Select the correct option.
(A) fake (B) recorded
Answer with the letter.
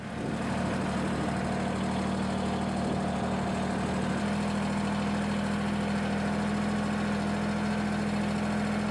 B